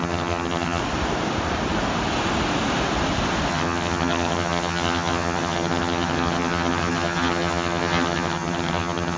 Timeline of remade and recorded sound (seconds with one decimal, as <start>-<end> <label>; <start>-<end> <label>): 0.0-0.8 remade; 0.8-3.5 recorded; 3.5-9.2 remade